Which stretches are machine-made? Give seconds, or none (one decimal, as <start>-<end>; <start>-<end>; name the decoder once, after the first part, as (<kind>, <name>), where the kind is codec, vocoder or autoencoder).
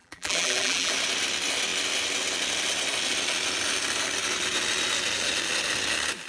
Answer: 0.0-0.9 (vocoder, BigVGAN v2)